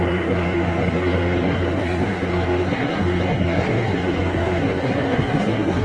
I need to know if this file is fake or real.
fake